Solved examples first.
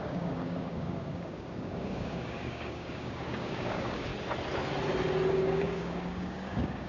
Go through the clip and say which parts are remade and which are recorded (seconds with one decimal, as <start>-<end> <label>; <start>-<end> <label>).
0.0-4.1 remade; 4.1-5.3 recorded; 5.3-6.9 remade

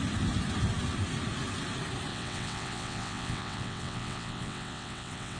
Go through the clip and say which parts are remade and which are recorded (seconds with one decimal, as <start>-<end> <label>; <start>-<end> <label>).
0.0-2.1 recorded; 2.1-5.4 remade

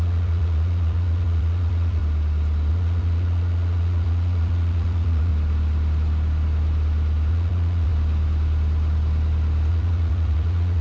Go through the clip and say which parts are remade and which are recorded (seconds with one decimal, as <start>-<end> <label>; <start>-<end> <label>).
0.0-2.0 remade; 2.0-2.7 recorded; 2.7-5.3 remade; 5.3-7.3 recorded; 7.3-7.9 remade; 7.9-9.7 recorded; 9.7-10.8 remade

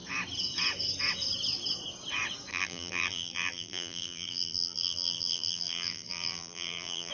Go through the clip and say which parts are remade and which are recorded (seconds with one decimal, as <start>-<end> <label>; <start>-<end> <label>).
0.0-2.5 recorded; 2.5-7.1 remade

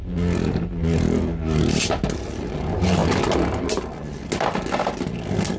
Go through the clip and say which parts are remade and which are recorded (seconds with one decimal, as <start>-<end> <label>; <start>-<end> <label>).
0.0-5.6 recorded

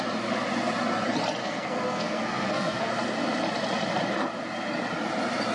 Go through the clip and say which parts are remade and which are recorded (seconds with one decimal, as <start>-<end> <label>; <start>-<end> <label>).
0.0-1.4 recorded; 1.4-2.9 remade; 2.9-5.5 recorded

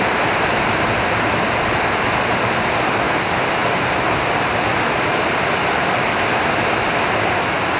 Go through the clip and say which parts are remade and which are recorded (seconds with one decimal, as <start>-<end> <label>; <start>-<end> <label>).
0.0-7.8 recorded

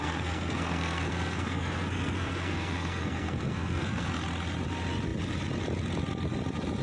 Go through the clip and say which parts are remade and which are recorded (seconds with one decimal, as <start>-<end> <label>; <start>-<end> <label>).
0.0-4.1 remade; 4.1-6.8 recorded